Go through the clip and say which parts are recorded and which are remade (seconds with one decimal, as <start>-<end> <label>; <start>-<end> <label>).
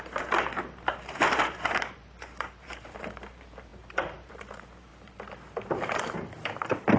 0.0-7.0 remade